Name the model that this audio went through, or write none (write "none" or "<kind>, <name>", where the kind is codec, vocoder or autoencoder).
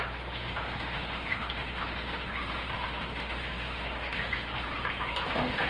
autoencoder, DAC-VAE